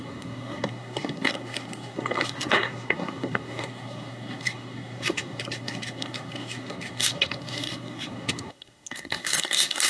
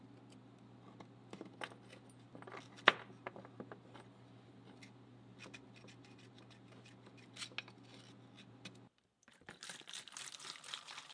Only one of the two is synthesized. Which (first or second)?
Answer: first